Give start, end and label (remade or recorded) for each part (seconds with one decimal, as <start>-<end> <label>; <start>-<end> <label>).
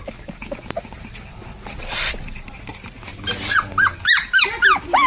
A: 0.0-5.1 recorded